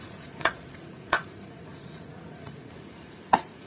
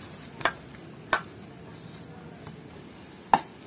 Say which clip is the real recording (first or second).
second